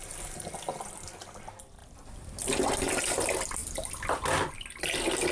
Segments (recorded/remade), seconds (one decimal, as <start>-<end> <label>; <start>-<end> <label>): 0.0-5.3 recorded